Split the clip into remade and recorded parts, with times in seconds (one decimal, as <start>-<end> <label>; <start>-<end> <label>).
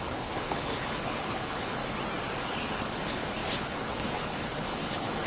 0.0-1.8 remade; 1.8-2.4 recorded; 2.4-5.3 remade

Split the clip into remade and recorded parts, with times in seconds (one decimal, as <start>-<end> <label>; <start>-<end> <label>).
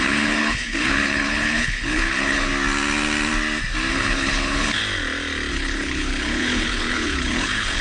0.0-2.5 remade; 2.5-3.9 recorded; 3.9-4.8 remade; 4.8-5.5 recorded; 5.5-7.8 remade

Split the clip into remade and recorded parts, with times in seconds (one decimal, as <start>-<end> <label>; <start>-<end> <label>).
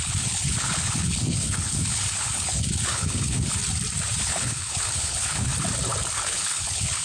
0.0-3.6 remade; 3.6-4.2 recorded; 4.2-5.5 remade; 5.5-6.1 recorded; 6.1-7.0 remade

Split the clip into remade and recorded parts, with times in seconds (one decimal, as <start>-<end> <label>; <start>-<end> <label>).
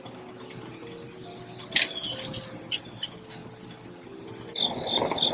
0.0-5.3 recorded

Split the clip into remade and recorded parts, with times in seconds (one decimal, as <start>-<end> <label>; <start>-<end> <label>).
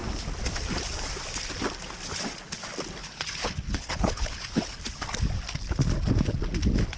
0.0-3.0 recorded; 3.0-4.8 remade; 4.8-7.0 recorded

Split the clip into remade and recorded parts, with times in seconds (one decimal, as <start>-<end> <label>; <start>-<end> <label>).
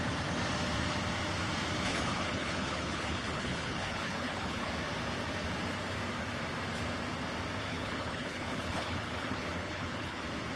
0.0-1.9 recorded; 1.9-4.7 remade; 4.7-7.7 recorded; 7.7-10.2 remade; 10.2-10.6 recorded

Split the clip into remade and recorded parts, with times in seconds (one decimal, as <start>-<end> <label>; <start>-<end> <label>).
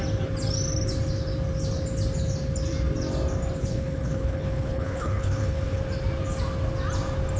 0.0-3.6 recorded; 3.6-5.8 remade; 5.8-7.4 recorded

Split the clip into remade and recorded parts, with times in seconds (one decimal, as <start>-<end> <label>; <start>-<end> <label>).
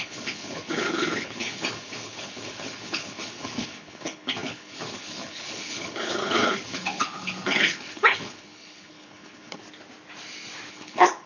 0.0-9.6 remade; 9.6-10.7 recorded; 10.7-11.3 remade